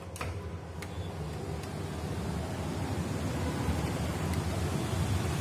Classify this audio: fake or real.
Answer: real